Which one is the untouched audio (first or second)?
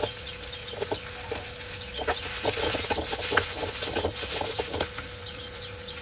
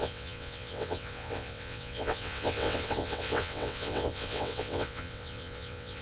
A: first